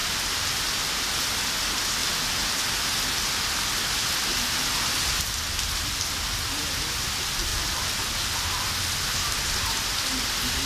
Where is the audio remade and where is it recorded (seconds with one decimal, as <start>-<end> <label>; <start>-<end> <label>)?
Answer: 0.0-7.5 recorded; 7.5-8.0 remade; 8.0-10.7 recorded